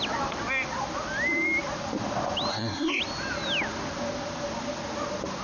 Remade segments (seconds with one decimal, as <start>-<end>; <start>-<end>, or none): 2.5-3.0